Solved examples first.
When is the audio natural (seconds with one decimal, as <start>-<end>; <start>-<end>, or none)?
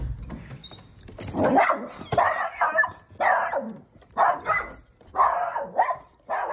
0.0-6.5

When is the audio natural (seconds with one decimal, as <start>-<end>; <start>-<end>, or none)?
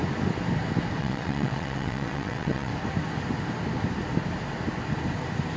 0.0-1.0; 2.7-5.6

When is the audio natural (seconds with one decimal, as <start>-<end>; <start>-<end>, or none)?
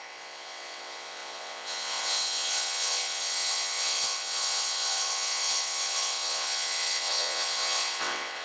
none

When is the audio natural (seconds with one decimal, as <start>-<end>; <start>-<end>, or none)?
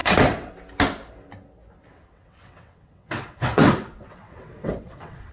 0.5-1.9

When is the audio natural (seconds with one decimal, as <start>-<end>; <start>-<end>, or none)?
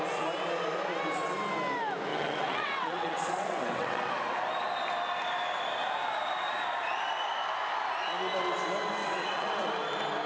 0.0-2.1; 4.1-9.0; 9.7-10.3